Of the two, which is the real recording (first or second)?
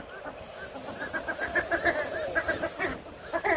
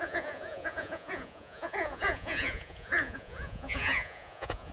first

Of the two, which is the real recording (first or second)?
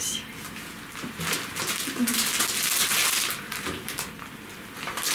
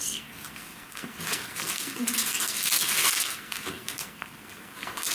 first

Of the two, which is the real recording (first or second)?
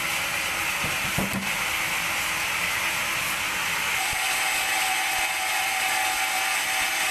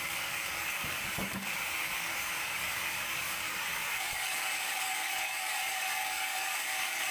first